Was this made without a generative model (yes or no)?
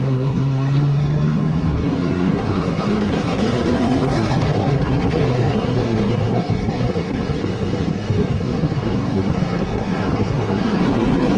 no